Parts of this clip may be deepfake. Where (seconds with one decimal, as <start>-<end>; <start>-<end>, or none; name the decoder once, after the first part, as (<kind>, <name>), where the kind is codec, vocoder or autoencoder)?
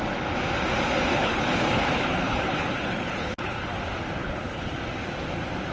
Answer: 1.1-3.7 (codec, HILCodec); 4.2-4.8